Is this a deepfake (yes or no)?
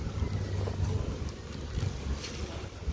no